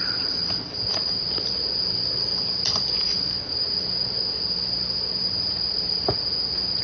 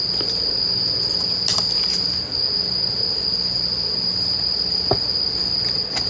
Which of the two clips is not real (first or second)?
first